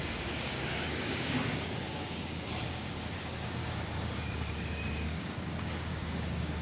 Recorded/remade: remade